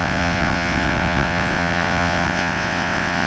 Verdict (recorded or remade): remade